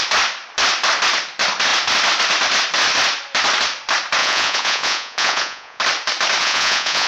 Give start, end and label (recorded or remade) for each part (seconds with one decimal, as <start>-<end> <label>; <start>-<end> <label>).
0.0-4.2 recorded; 4.2-5.8 remade; 5.8-6.4 recorded; 6.4-7.1 remade

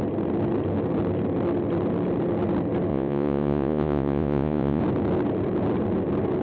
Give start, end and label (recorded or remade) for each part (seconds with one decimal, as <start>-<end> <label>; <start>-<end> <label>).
0.0-2.9 recorded; 2.9-4.8 remade; 4.8-6.4 recorded

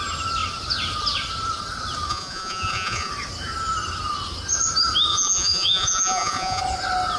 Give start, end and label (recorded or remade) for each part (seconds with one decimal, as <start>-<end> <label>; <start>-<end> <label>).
0.0-2.1 recorded; 2.1-3.1 remade; 3.1-5.1 recorded; 5.1-6.6 remade; 6.6-7.2 recorded

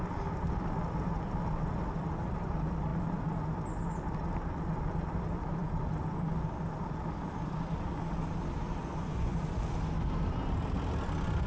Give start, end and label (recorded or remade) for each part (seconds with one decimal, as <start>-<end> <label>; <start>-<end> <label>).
0.0-8.9 recorded; 8.9-9.4 remade; 9.4-11.5 recorded

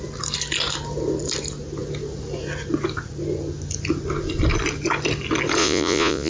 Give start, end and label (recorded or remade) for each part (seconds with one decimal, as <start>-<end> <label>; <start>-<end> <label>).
0.0-5.6 recorded; 5.6-6.3 remade

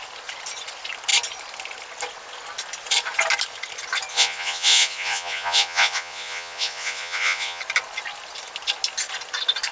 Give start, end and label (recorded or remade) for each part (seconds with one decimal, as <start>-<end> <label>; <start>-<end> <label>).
0.0-4.1 recorded; 4.1-7.6 remade; 7.6-9.7 recorded